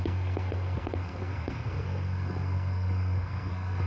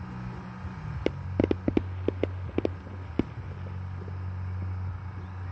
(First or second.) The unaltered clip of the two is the second